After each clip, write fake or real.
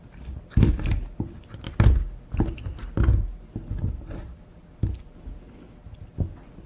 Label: real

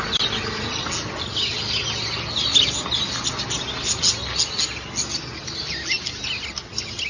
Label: real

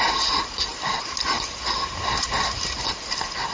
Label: real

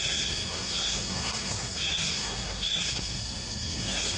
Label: fake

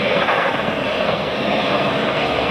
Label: fake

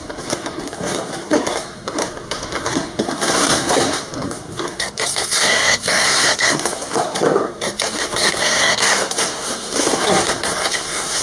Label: fake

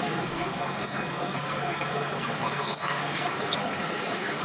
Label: fake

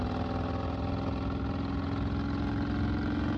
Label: real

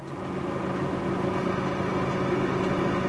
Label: real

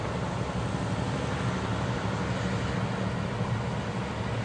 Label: real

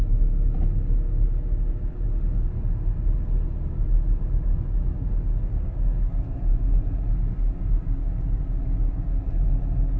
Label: real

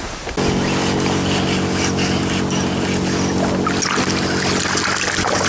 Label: real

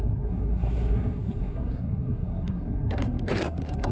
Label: fake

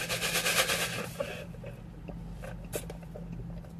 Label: real